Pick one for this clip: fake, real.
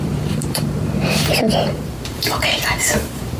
fake